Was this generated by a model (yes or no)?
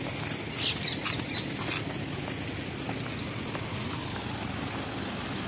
no